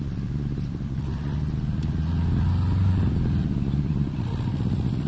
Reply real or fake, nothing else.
real